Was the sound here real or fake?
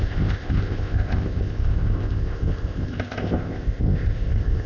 fake